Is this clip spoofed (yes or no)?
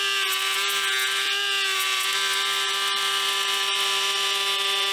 no